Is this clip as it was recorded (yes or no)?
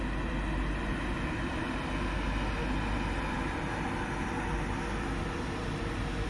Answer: yes